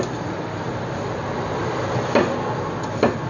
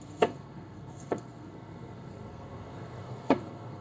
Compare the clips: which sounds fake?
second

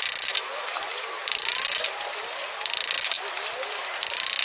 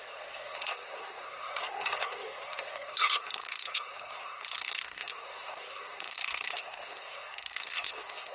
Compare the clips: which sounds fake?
second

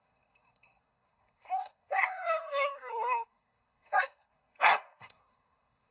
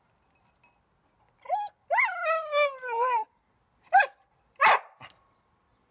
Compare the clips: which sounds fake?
first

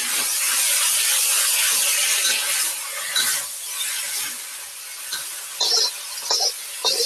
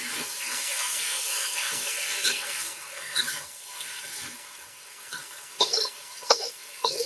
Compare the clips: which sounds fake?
second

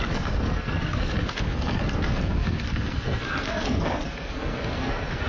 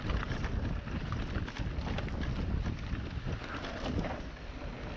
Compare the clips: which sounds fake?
first